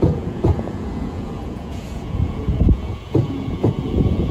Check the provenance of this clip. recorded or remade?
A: remade